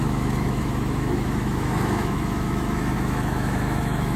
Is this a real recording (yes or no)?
no